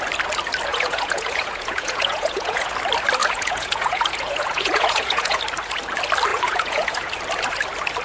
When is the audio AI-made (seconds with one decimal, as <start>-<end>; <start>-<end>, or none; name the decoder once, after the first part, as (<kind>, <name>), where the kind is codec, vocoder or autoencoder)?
0.7-2.7 (vocoder, Vocos); 3.2-5.4; 6.3-7.1